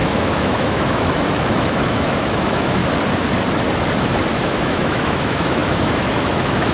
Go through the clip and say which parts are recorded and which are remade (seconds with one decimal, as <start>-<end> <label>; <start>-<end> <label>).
0.0-2.8 remade; 2.8-4.3 recorded; 4.3-6.7 remade

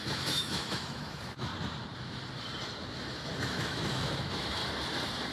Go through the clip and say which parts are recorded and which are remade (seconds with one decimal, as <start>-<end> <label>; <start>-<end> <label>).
0.0-1.5 remade; 1.5-2.9 recorded; 2.9-4.6 remade; 4.6-5.3 recorded

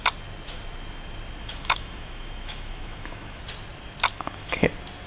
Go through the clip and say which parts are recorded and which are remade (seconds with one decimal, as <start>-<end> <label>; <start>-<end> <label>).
0.0-1.4 recorded; 1.4-3.4 remade; 3.4-4.1 recorded; 4.1-4.6 remade; 4.6-5.1 recorded

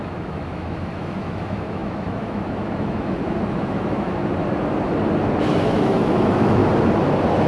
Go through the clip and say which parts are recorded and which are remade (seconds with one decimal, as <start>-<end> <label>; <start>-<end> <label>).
0.0-4.2 remade; 4.2-5.5 recorded; 5.5-6.6 remade; 6.6-7.5 recorded

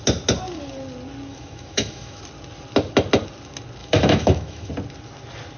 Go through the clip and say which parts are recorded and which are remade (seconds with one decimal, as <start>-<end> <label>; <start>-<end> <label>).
0.0-1.3 recorded; 1.3-2.2 remade; 2.2-3.8 recorded; 3.8-4.7 remade; 4.7-5.6 recorded

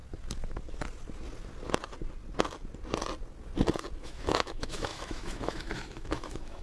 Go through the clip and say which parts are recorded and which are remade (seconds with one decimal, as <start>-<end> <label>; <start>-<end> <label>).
0.0-4.0 recorded; 4.0-6.6 remade